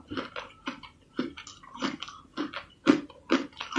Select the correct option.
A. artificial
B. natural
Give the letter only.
B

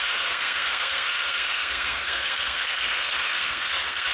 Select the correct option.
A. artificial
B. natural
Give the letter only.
A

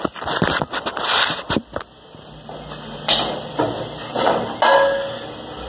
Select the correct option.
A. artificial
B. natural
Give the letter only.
B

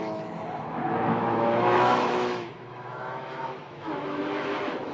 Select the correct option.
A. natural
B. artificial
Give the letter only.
B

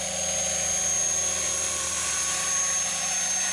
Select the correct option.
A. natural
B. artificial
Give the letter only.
A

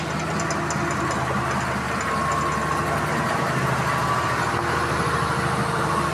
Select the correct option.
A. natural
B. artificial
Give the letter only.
A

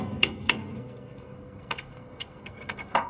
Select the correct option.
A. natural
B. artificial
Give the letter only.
B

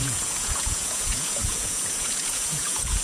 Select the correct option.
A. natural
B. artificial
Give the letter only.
B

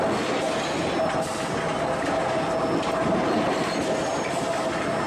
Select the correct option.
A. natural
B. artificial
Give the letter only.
A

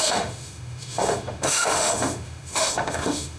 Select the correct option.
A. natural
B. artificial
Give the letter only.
B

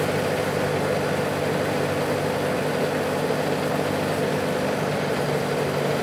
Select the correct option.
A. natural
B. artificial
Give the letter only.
A